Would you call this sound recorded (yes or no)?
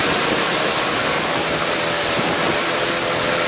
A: yes